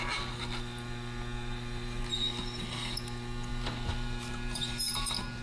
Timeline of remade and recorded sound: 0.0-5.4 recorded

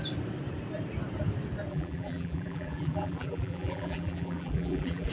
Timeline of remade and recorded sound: 0.0-1.7 recorded; 1.7-5.1 remade

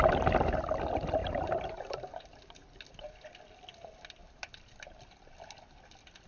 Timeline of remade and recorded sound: 0.0-1.2 recorded; 1.2-2.4 remade; 2.4-4.2 recorded; 4.2-5.6 remade; 5.6-6.3 recorded

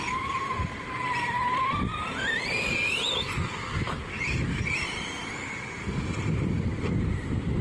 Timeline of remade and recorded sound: 0.0-7.6 recorded

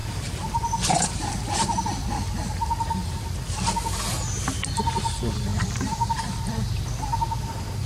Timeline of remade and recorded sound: 0.0-1.8 remade; 1.8-5.5 recorded; 5.5-6.2 remade; 6.2-7.9 recorded

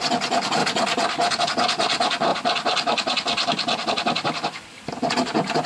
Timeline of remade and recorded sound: 0.0-0.6 recorded; 0.6-1.4 remade; 1.4-5.7 recorded

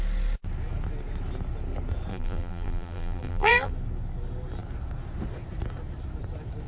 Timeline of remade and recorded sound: 0.0-2.1 recorded; 2.1-3.7 remade; 3.7-6.7 recorded